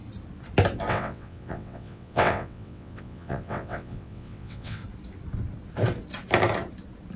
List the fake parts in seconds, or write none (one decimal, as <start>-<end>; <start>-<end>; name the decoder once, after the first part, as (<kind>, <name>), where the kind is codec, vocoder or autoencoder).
0.9-4.8 (vocoder, WaveNeXt)